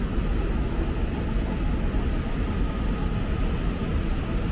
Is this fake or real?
real